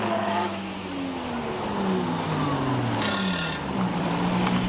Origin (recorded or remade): recorded